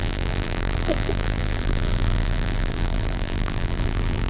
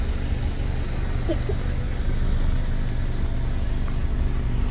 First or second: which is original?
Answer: second